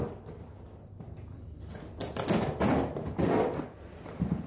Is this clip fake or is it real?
real